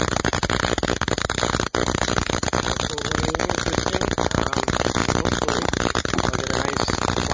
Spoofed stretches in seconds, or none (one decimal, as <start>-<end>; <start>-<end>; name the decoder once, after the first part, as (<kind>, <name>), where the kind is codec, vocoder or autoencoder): 3.4-4.4 (vocoder, BigVGAN v2)